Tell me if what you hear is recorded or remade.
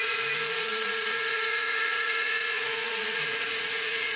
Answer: remade